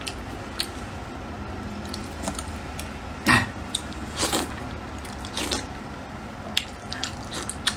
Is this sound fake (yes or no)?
no